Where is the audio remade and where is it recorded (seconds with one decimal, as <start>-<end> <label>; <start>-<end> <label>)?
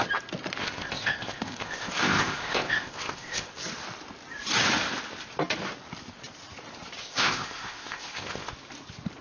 0.0-0.6 recorded; 0.6-3.5 remade; 3.5-7.0 recorded; 7.0-8.5 remade; 8.5-9.2 recorded